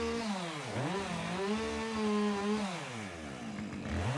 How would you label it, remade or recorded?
recorded